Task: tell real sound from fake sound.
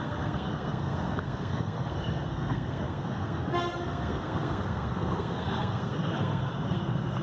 fake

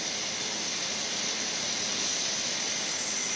real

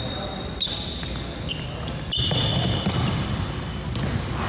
real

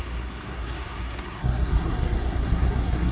fake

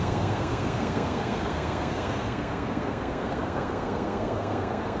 fake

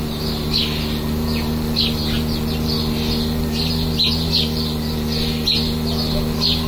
real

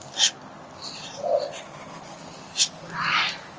real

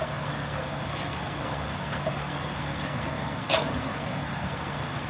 fake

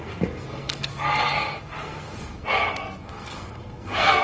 fake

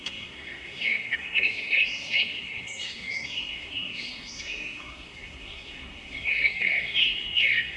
fake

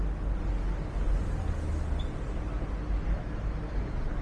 real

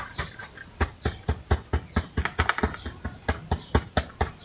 real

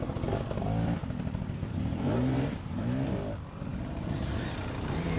real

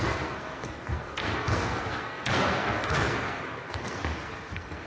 fake